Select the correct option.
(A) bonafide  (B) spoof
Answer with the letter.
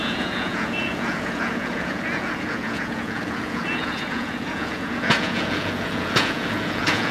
B